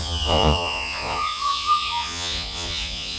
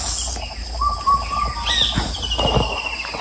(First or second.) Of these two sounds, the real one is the second